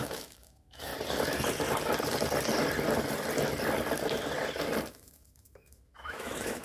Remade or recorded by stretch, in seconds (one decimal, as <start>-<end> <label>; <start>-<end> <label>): 0.0-0.9 remade; 0.9-4.9 recorded; 4.9-6.6 remade